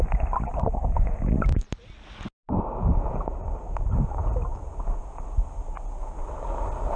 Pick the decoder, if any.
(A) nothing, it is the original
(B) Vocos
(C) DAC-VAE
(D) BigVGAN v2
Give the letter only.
A